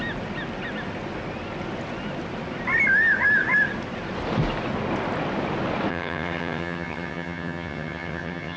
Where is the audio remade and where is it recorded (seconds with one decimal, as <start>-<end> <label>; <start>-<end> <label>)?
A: 0.0-5.9 recorded; 5.9-8.6 remade